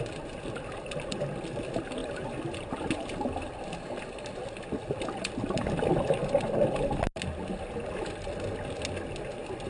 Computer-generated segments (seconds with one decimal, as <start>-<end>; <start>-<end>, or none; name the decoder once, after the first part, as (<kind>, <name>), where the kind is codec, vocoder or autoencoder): none